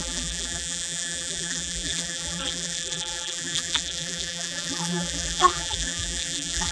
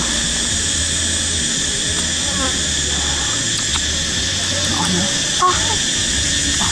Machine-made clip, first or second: first